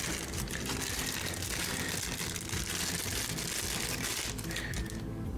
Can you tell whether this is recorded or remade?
recorded